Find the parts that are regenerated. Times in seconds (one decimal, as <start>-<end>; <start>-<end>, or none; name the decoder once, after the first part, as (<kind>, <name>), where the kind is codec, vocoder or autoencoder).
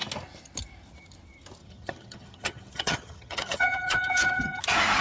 1.6-4.6 (vocoder, HiFi-GAN)